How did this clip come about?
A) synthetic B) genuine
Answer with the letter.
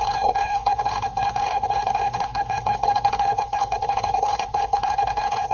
A